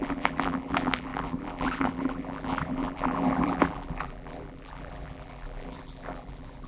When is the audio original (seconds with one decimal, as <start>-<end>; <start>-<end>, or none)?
none